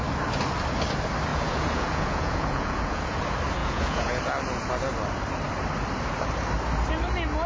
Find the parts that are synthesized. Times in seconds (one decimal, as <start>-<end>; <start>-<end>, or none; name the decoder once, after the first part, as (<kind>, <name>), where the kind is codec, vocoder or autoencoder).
1.3-3.2 (vocoder, Vocos); 3.6-4.2